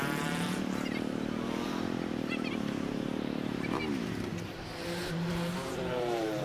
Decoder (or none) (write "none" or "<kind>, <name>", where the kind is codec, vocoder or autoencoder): vocoder, BigVGAN v2